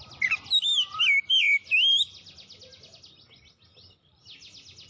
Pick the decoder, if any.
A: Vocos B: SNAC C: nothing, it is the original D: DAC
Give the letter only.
C